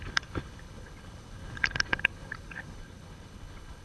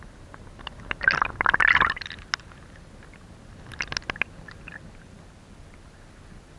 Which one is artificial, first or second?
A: first